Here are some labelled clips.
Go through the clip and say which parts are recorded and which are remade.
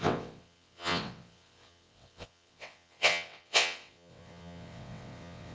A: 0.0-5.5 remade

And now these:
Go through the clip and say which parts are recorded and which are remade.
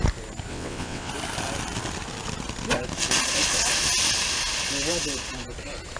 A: 0.0-0.5 recorded; 0.5-1.1 remade; 1.1-6.0 recorded